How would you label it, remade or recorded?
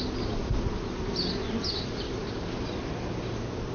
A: recorded